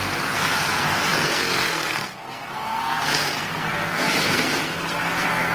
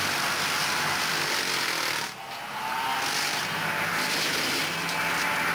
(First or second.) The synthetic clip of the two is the first